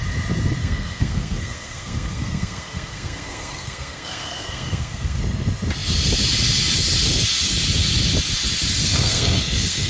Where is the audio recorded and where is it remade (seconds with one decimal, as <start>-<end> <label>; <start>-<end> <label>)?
0.0-0.6 recorded; 0.6-5.2 remade; 5.2-8.8 recorded; 8.8-9.9 remade